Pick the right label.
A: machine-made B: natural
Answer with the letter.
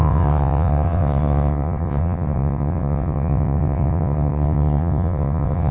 A